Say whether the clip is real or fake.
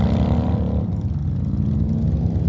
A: real